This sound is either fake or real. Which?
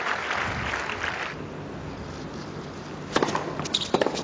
real